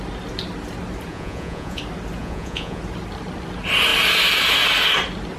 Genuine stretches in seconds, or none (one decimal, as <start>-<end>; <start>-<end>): 0.0-1.1; 1.8-2.2; 2.8-5.4